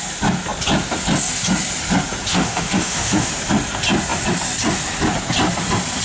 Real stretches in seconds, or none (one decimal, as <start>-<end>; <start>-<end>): 0.0-2.3; 3.3-6.0